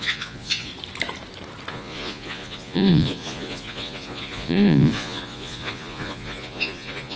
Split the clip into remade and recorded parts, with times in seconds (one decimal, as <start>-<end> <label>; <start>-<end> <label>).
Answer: 0.0-0.7 remade; 0.7-1.7 recorded; 1.7-7.2 remade